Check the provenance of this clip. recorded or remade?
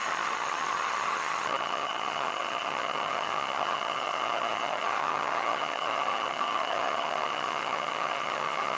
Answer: remade